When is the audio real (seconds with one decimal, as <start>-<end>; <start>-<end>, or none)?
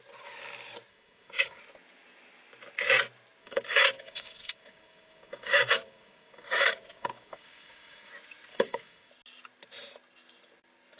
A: 0.0-0.9; 1.6-3.4; 8.1-8.5; 9.1-11.0